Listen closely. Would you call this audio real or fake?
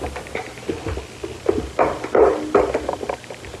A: real